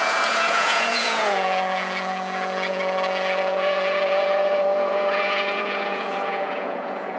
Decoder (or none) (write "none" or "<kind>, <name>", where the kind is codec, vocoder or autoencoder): vocoder, Vocos